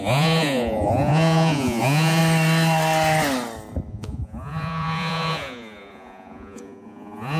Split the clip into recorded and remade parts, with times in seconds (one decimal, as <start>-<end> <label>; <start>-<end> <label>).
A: 0.0-2.2 remade; 2.2-3.9 recorded; 3.9-7.4 remade